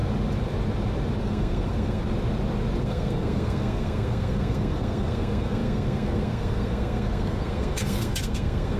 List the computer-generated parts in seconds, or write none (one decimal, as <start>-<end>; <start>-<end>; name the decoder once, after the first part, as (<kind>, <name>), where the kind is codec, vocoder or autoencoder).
1.2-2.0 (codec, SNAC); 2.8-8.8